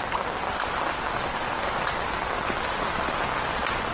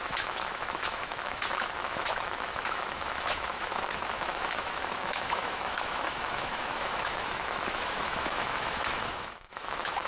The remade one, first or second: second